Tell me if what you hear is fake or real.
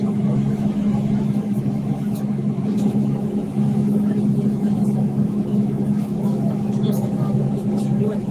fake